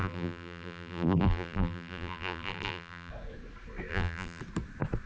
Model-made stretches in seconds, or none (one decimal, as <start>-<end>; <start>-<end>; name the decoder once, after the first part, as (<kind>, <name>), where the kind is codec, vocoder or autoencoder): 0.0-3.1 (vocoder, BigVGAN v2); 3.9-4.4